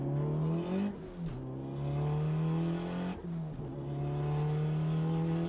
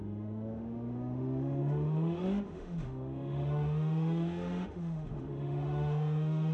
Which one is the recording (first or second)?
first